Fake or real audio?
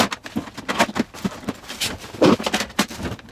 real